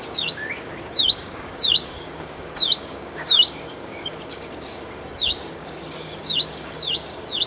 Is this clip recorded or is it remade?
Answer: remade